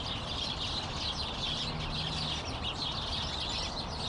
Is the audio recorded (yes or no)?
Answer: yes